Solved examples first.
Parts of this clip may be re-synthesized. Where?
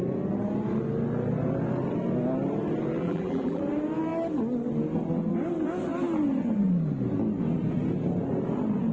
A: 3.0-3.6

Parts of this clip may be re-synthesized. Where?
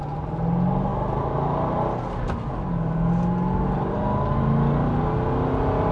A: none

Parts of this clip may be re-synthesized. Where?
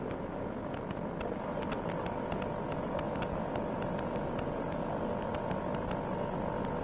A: none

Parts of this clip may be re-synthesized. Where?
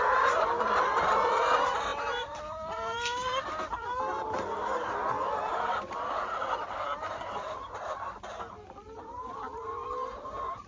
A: 0.0-10.7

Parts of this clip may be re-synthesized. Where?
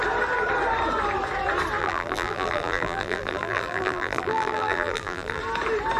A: 1.8-5.4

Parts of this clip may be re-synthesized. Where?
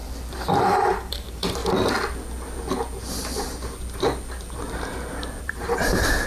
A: 0.6-1.6; 5.4-6.3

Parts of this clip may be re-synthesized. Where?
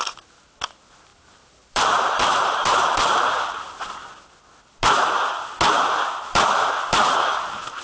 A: 1.1-3.5